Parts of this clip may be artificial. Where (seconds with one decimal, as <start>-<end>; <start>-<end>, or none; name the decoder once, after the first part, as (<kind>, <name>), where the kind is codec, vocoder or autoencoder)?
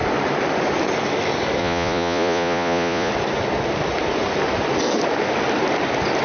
1.6-3.1 (vocoder, Vocos)